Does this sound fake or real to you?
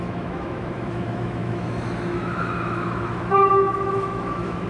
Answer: fake